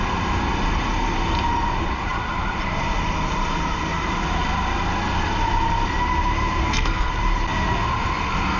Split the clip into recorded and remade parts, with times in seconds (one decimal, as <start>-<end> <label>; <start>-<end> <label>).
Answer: 0.0-6.6 recorded; 6.6-7.1 remade; 7.1-8.6 recorded